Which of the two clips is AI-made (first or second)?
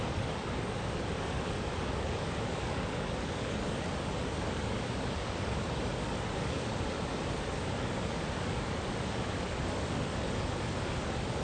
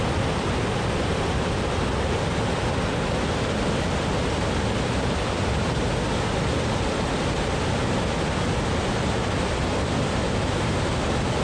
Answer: first